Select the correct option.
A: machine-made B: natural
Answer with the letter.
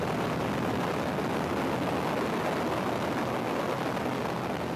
B